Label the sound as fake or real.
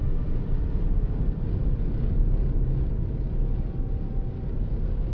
real